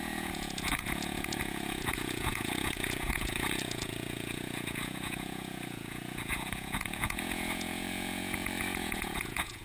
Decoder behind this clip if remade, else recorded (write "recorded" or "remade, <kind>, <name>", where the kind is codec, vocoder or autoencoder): remade, vocoder, Vocos